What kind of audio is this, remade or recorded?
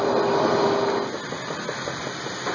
recorded